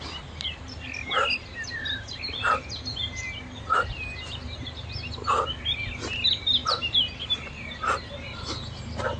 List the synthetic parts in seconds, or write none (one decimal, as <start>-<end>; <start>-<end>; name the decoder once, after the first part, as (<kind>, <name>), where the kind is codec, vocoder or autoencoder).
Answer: 6.6-8.5 (vocoder, BigVGAN v2)